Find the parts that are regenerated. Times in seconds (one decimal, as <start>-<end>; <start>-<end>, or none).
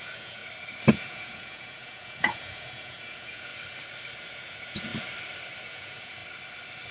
0.0-0.4; 0.9-3.5; 4.3-4.9; 5.6-6.2